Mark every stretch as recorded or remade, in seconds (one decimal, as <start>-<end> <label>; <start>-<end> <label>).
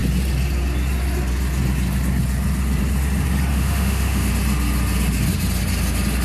0.0-3.5 recorded; 3.5-4.3 remade; 4.3-6.2 recorded